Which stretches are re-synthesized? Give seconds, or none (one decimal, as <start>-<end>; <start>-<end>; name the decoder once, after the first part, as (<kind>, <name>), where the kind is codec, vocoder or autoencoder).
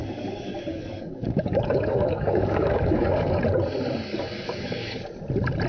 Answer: 0.0-3.4 (codec, DAC); 4.1-5.0